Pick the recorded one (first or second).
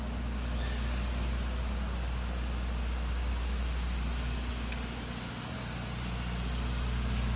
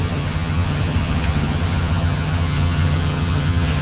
first